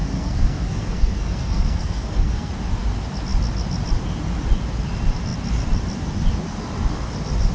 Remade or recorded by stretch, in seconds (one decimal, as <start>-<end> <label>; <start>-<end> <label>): 0.0-2.5 remade; 2.5-7.5 recorded